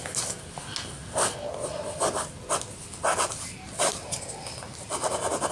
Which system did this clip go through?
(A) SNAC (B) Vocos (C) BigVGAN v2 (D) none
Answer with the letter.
D